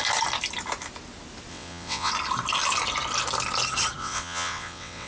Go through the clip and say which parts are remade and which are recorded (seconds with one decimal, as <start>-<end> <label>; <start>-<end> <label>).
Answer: 0.0-1.5 recorded; 1.5-2.1 remade; 2.1-4.0 recorded; 4.0-5.1 remade